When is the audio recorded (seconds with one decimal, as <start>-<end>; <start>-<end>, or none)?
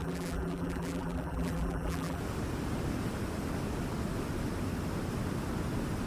2.2-6.1